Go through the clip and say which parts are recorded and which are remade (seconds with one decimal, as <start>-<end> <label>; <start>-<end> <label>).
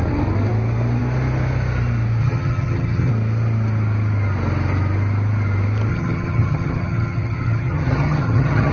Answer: 0.0-2.2 recorded; 2.2-3.1 remade; 3.1-5.9 recorded; 5.9-8.7 remade